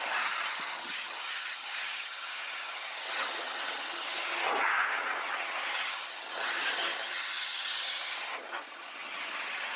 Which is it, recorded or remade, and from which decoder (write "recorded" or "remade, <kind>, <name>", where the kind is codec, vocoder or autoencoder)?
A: remade, vocoder, HiFi-GAN